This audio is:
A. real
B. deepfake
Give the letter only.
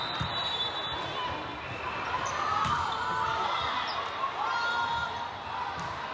A